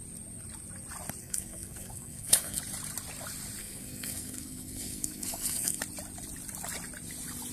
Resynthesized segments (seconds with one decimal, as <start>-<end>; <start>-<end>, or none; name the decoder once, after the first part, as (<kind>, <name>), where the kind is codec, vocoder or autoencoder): 1.2-2.6 (codec, SNAC); 3.6-5.8